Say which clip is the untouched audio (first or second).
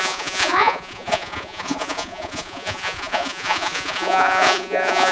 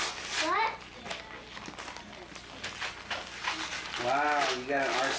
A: second